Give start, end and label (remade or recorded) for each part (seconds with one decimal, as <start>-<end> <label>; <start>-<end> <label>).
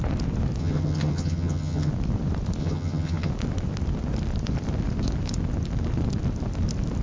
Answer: 0.0-0.6 recorded; 0.6-1.9 remade; 1.9-2.6 recorded; 2.6-3.3 remade; 3.3-7.0 recorded